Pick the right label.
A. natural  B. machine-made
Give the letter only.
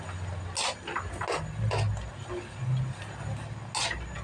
A